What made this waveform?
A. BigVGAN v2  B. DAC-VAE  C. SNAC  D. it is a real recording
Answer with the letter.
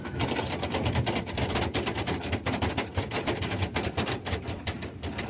A